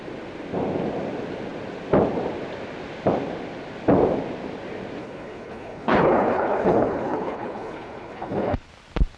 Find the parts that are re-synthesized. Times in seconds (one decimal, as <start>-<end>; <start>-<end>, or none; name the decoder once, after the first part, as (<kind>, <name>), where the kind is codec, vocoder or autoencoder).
5.0-8.7 (codec, HILCodec)

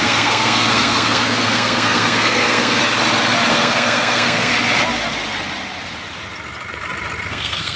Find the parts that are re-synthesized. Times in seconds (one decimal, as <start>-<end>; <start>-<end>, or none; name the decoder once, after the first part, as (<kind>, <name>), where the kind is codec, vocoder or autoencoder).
0.0-2.8 (codec, SNAC); 3.5-4.5; 7.3-7.8

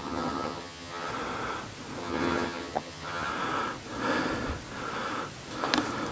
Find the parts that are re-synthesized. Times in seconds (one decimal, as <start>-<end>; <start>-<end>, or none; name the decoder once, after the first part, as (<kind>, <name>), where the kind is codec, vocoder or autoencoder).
0.0-1.1 (vocoder, HiFi-GAN); 2.0-3.3

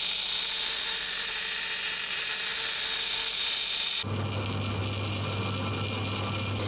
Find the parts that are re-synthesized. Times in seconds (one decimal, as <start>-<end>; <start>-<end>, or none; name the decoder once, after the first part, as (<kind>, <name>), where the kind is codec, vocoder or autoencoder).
none

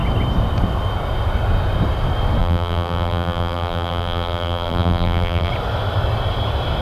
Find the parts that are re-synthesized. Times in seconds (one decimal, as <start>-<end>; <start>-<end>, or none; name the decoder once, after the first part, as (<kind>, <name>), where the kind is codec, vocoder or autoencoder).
2.4-5.5 (vocoder, BigVGAN v2)

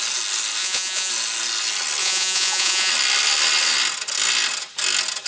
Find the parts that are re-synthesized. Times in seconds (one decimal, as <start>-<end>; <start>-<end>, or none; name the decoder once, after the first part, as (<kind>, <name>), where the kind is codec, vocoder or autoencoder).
0.6-1.1 (vocoder, Vocos); 2.0-2.9

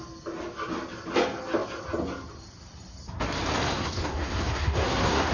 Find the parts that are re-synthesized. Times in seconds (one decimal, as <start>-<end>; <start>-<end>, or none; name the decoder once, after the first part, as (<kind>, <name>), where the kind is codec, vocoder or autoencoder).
3.7-5.3 (codec, SNAC)